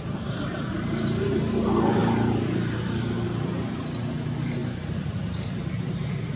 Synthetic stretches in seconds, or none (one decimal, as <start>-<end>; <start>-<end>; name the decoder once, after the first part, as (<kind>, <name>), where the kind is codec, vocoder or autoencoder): 0.0-2.0 (vocoder, BigVGAN v2); 2.8-6.4